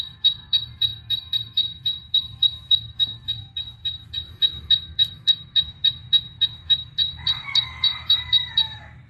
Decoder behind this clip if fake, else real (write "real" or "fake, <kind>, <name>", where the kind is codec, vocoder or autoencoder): fake, vocoder, BigVGAN v2